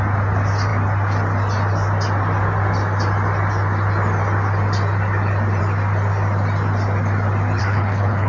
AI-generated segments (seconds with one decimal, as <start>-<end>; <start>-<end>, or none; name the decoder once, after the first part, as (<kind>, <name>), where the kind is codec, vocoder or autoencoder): 7.6-8.3 (codec, HILCodec)